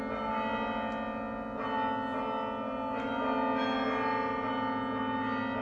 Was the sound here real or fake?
real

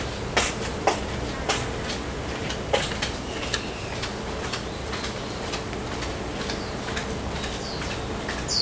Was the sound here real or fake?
real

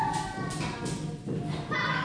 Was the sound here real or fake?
real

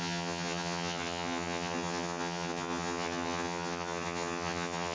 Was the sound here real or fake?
fake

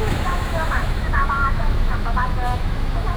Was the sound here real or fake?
fake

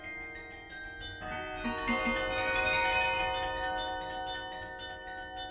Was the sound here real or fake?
real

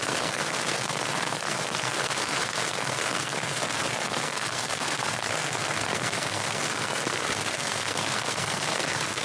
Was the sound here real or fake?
fake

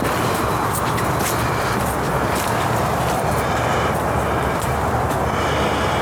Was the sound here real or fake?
real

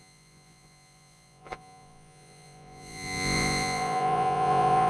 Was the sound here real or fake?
fake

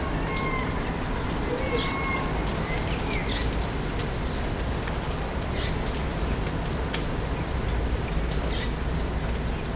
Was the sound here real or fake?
real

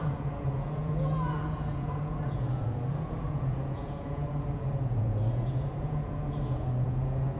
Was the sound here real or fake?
fake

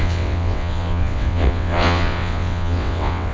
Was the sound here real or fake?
fake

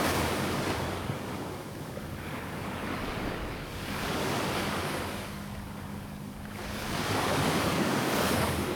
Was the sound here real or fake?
fake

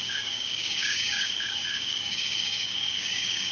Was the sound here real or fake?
fake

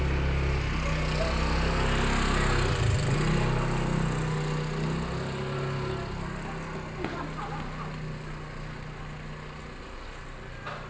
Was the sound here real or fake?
real